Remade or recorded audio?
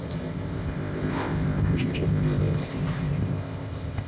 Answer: remade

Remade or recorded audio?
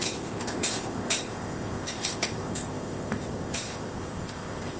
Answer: remade